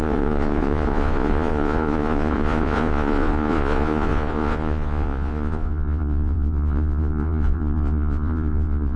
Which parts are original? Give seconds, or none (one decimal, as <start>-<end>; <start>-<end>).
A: none